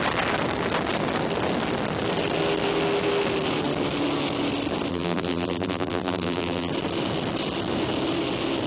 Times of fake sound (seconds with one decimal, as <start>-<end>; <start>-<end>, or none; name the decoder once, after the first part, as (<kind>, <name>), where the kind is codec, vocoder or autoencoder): 4.9-6.7 (vocoder, BigVGAN v2)